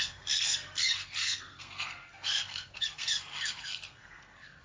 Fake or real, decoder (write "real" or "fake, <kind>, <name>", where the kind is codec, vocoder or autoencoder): fake, codec, SNAC